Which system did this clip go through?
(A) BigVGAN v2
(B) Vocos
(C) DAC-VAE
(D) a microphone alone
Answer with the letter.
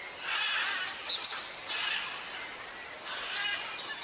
D